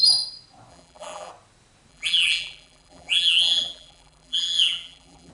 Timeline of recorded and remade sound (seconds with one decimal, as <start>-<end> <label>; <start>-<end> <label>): 0.0-0.7 recorded; 0.7-1.3 remade; 1.3-1.9 recorded; 1.9-5.3 remade